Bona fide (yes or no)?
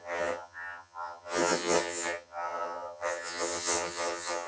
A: no